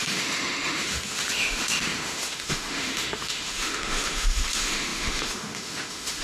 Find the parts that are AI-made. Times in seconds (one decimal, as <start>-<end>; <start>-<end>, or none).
0.0-6.2